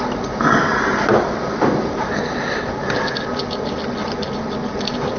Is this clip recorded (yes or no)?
yes